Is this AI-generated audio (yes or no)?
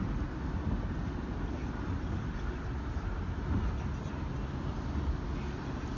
no